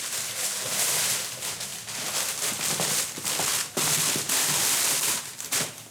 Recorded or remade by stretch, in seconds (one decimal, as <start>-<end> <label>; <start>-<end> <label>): 0.0-3.5 recorded; 3.5-4.6 remade; 4.6-5.9 recorded